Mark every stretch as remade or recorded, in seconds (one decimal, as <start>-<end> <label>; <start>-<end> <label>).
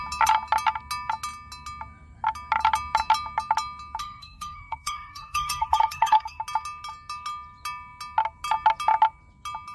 0.0-4.0 recorded; 4.0-6.4 remade; 6.4-9.7 recorded